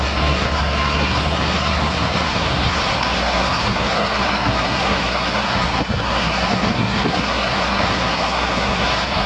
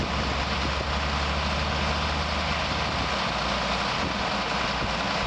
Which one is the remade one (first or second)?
first